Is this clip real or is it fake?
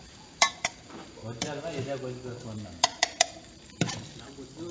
fake